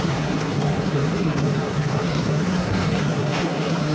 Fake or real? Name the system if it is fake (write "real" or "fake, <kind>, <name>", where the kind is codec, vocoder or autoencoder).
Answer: fake, codec, SNAC